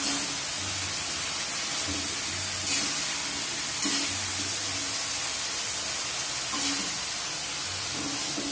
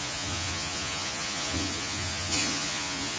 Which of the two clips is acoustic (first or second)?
first